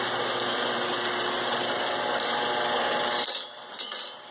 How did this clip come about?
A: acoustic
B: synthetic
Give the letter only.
A